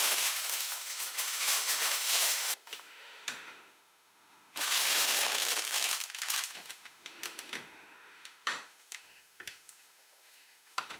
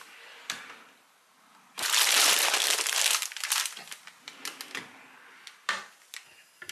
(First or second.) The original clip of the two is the second